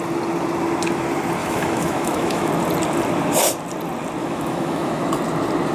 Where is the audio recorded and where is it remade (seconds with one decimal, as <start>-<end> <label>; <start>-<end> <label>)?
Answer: 0.0-1.4 recorded; 1.4-2.5 remade; 2.5-4.2 recorded; 4.2-5.1 remade; 5.1-5.7 recorded